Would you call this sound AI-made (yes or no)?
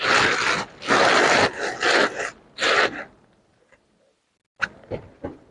no